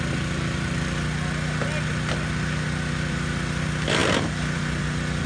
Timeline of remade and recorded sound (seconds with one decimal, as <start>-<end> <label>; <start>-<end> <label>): 0.0-4.0 recorded; 4.0-4.8 remade; 4.8-5.3 recorded